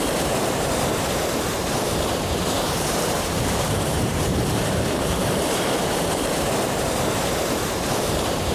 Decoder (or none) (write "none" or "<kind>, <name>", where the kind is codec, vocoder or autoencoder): vocoder, BigVGAN v2